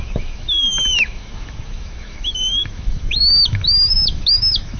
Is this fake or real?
fake